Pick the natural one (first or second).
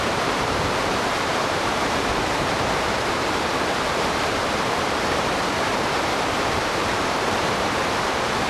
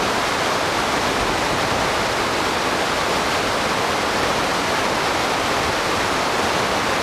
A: second